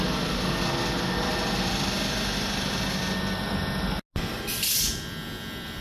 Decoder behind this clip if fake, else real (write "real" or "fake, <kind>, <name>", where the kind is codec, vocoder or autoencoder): real